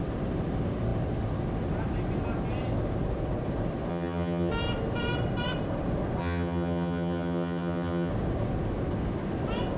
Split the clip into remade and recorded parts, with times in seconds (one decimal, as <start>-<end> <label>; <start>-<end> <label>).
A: 0.0-3.9 recorded; 3.9-4.5 remade; 4.5-6.2 recorded; 6.2-8.1 remade; 8.1-9.8 recorded